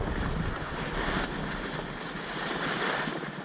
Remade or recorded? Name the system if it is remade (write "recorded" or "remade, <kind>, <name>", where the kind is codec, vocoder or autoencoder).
recorded